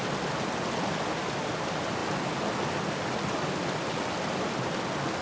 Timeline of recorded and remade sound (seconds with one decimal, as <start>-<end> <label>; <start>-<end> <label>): 0.0-5.2 recorded